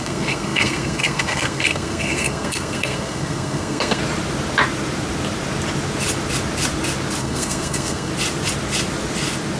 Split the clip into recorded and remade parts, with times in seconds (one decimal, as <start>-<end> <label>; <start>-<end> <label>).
0.0-4.0 remade; 4.0-7.2 recorded; 7.2-8.1 remade; 8.1-9.6 recorded